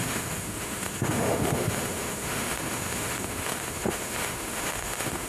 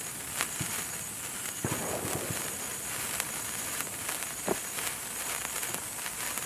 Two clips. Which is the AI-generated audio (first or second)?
first